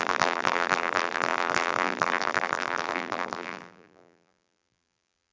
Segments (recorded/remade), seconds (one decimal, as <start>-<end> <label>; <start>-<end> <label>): 0.0-5.3 remade